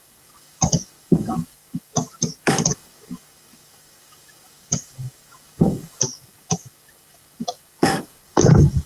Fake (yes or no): yes